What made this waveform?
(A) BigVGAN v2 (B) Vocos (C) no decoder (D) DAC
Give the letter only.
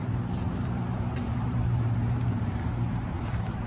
A